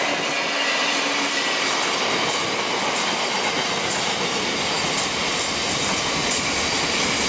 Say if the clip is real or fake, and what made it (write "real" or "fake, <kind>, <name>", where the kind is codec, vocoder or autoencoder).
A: real